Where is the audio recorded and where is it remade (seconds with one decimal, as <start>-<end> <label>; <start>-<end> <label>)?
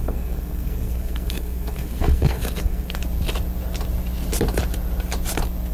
0.0-3.0 remade; 3.0-5.7 recorded